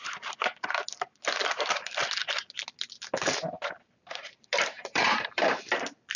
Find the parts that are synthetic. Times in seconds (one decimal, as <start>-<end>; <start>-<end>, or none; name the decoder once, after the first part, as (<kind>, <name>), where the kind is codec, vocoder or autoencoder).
4.8-5.7 (vocoder, BigVGAN v2)